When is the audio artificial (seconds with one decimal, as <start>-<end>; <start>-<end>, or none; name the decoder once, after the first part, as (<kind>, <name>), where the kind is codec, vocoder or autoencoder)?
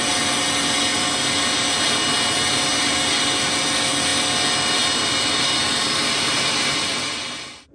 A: none